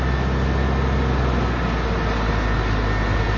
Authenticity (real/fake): real